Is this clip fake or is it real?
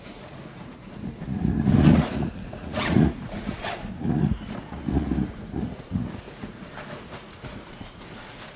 fake